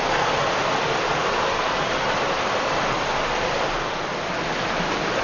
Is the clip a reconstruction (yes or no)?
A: no